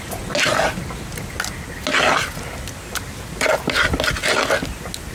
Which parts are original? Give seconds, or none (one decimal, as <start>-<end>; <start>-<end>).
0.0-5.1